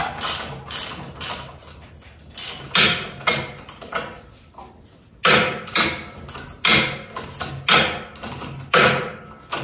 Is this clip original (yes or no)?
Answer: yes